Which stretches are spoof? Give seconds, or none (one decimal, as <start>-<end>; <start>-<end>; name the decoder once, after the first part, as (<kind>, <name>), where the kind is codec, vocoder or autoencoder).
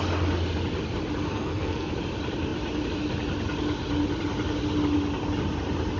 1.3-1.9 (codec, SNAC)